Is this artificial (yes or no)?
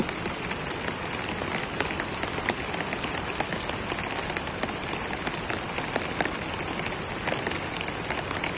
no